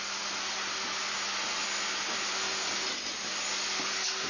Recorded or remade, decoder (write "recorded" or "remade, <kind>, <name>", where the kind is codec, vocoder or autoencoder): recorded